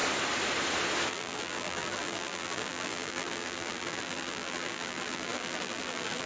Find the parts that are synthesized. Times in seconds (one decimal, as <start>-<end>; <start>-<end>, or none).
1.1-6.3